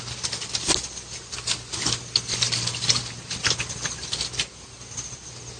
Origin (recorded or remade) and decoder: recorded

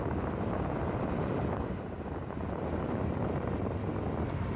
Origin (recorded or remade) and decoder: recorded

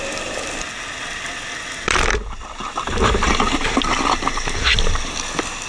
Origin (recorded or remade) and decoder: recorded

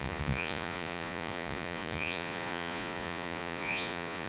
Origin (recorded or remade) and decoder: remade, vocoder, Vocos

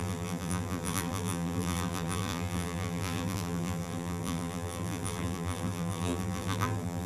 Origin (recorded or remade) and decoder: remade, vocoder, BigVGAN v2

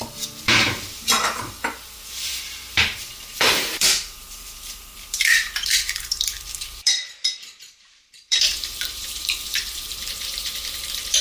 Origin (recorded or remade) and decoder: remade, vocoder, BigVGAN v2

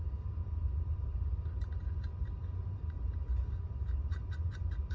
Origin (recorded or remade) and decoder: remade, vocoder, BigVGAN v2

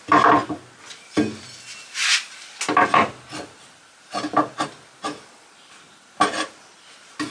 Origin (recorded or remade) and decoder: recorded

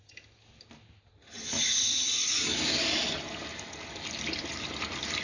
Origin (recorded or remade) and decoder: recorded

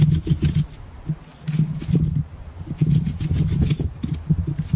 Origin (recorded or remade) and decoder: recorded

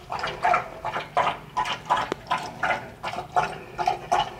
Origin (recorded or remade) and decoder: recorded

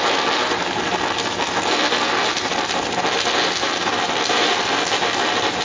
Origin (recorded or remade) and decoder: recorded